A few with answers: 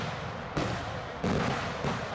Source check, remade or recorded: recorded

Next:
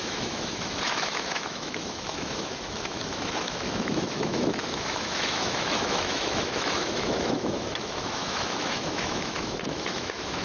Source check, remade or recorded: remade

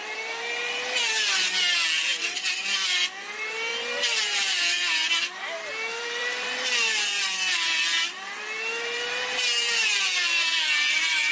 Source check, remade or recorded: remade